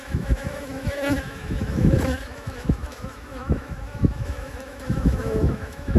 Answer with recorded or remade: remade